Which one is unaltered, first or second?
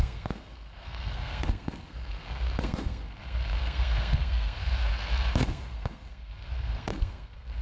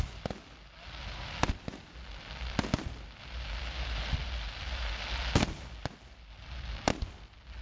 second